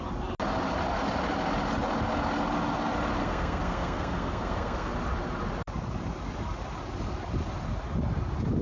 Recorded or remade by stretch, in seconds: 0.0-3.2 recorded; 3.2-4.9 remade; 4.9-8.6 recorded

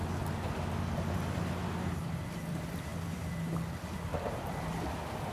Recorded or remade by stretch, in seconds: 0.0-5.3 recorded